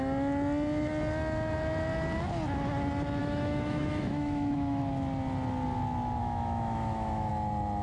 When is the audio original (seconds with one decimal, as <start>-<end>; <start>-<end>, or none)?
0.0-3.2; 4.8-6.2; 7.3-7.8